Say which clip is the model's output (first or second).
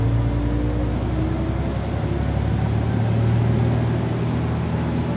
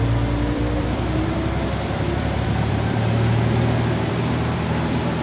second